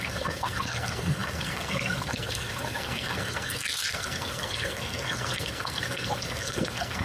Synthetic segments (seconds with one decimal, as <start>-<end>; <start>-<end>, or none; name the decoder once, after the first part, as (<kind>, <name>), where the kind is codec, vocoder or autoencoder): 0.0-7.0 (codec, SNAC)

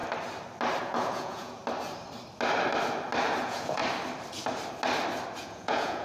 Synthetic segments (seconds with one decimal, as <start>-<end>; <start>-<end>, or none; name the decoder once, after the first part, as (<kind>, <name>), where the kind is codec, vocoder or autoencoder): 0.8-1.6 (vocoder, Vocos); 3.4-3.8; 5.4-6.0

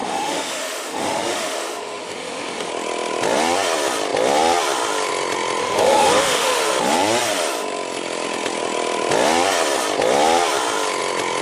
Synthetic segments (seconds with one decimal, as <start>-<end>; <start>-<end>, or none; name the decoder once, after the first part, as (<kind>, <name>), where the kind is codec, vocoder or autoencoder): 0.0-2.7 (autoencoder, DAC-VAE); 5.6-6.7

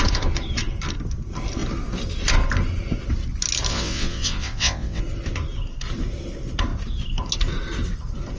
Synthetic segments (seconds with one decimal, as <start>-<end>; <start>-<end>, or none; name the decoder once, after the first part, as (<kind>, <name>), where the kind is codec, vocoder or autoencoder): 3.7-5.0 (vocoder, WaveNeXt)

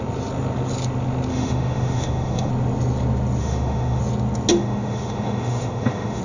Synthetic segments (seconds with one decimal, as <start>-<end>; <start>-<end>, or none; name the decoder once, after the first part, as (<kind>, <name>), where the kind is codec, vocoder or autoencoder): 1.3-2.5 (autoencoder, DAC-VAE); 3.4-4.0; 4.5-6.2